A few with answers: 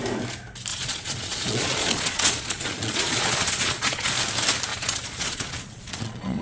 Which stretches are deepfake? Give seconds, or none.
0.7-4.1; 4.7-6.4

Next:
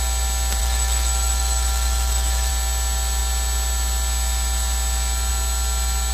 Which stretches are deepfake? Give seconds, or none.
0.6-2.5

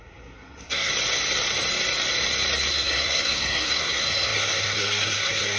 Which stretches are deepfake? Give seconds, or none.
0.0-0.9; 2.7-5.6